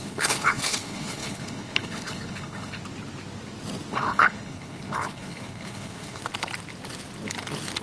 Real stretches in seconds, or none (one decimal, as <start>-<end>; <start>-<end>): 2.8-3.9; 6.2-7.8